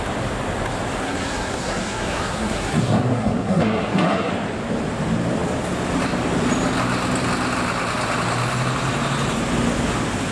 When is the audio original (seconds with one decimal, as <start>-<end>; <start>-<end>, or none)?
0.0-1.0; 4.3-10.3